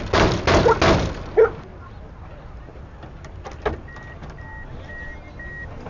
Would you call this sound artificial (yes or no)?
no